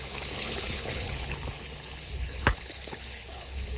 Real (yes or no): no